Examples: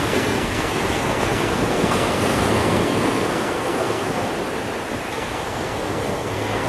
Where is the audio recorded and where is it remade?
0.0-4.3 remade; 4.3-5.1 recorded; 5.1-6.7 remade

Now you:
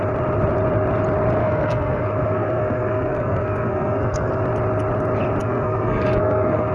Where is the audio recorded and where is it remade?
0.0-1.4 recorded; 1.4-4.3 remade; 4.3-5.4 recorded; 5.4-6.7 remade

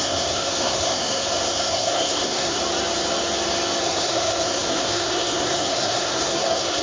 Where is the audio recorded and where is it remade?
0.0-2.6 remade; 2.6-3.8 recorded; 3.8-6.8 remade

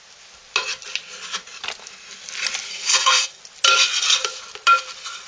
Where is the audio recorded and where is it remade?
0.0-2.7 recorded; 2.7-3.4 remade; 3.4-5.3 recorded

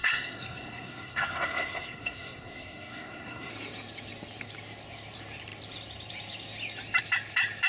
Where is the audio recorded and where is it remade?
0.0-3.5 remade; 3.5-7.7 recorded

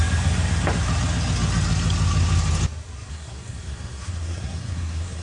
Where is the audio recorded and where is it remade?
0.0-3.1 recorded; 3.1-5.2 remade

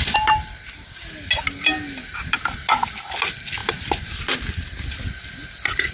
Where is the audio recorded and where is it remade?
0.0-5.9 recorded